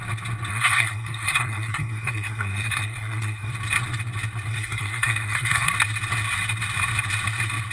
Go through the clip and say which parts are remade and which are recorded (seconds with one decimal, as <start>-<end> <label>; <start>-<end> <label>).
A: 0.0-0.5 recorded; 0.5-3.5 remade; 3.5-4.5 recorded; 4.5-5.7 remade; 5.7-7.7 recorded